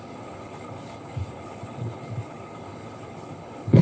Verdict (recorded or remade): remade